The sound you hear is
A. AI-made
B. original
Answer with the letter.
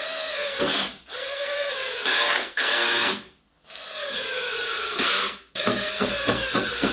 A